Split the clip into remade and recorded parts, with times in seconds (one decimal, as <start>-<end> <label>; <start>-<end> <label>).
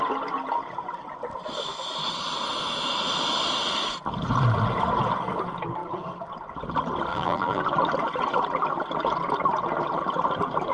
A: 0.0-7.1 recorded; 7.1-7.6 remade; 7.6-10.7 recorded